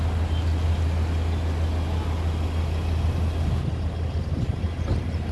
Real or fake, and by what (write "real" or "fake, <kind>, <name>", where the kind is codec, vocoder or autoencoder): real